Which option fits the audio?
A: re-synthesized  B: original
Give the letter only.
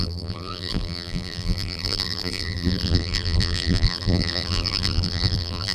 A